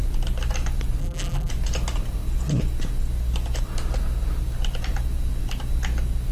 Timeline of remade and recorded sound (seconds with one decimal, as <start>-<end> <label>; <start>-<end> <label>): 0.0-1.0 recorded; 1.0-1.5 remade; 1.5-6.3 recorded